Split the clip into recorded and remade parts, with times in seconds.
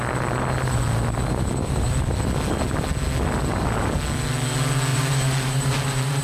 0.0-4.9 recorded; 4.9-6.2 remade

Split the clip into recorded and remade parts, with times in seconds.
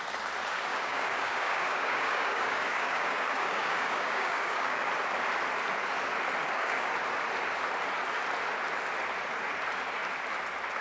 0.0-0.7 recorded; 0.7-4.9 remade; 4.9-6.4 recorded; 6.4-6.9 remade; 6.9-10.8 recorded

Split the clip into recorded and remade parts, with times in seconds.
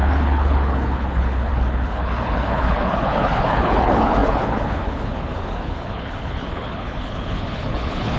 0.0-8.2 remade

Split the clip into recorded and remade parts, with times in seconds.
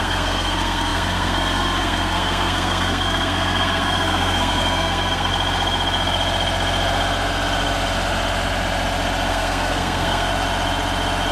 0.0-5.3 remade; 5.3-9.3 recorded; 9.3-10.3 remade; 10.3-11.3 recorded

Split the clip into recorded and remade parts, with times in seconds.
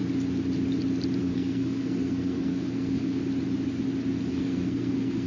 0.0-1.2 recorded; 1.2-3.2 remade; 3.2-4.3 recorded; 4.3-5.3 remade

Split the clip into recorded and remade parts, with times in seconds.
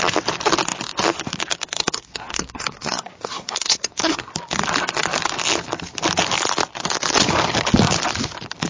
0.0-1.8 recorded; 1.8-4.3 remade; 4.3-8.7 recorded